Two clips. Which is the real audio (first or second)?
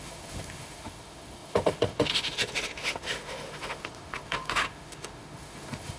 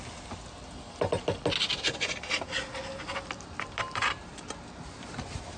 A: second